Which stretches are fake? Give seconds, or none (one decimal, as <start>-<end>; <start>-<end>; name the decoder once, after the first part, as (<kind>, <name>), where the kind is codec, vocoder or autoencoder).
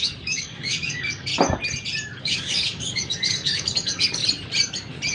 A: 0.0-1.3 (codec, DAC); 2.2-4.2